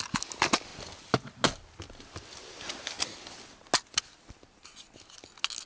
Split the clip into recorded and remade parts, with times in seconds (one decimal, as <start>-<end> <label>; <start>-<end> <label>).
0.0-5.7 recorded

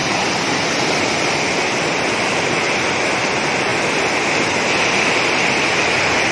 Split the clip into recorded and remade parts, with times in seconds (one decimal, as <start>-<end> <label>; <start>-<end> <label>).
0.0-6.3 recorded